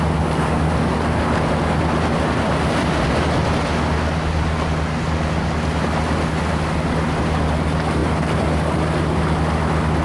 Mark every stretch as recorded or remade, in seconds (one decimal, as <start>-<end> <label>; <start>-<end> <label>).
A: 0.0-10.0 recorded